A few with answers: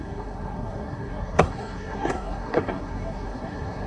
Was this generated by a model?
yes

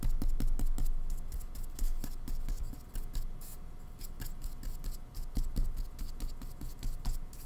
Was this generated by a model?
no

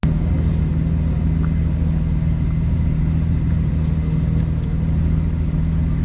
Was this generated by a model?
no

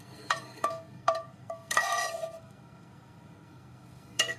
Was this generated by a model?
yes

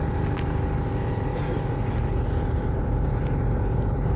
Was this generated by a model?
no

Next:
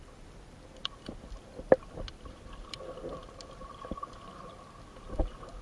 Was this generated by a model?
no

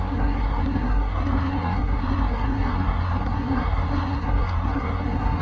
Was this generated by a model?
yes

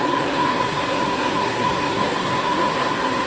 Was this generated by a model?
yes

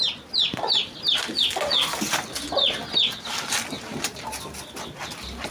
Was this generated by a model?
no